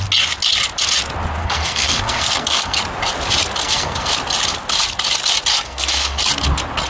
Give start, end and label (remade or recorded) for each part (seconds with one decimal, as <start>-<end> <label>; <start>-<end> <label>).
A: 0.0-1.4 recorded; 1.4-2.8 remade; 2.8-3.6 recorded; 3.6-4.1 remade; 4.1-5.5 recorded; 5.5-6.2 remade; 6.2-6.9 recorded